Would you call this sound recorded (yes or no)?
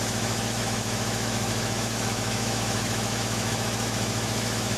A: no